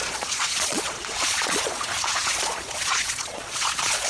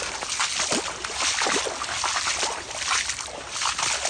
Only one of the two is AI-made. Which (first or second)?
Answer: first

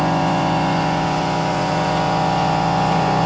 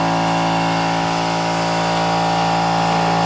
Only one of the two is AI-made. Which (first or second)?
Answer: first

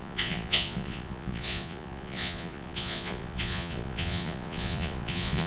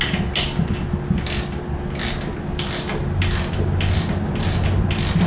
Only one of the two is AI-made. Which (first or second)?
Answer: first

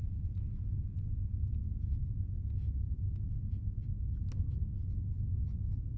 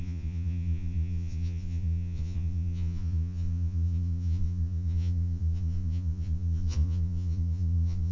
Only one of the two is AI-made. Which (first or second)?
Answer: second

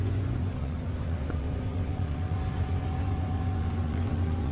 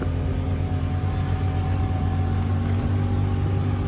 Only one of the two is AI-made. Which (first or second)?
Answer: first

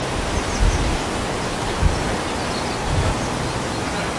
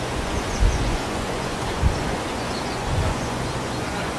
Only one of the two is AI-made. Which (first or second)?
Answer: second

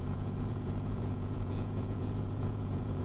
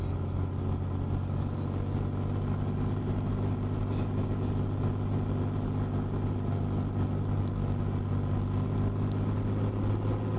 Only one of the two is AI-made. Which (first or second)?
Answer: first